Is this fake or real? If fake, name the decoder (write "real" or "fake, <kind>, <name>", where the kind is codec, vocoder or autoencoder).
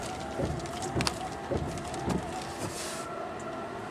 real